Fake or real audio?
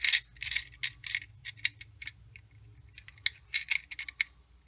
real